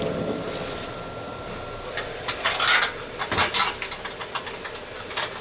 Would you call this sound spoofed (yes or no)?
no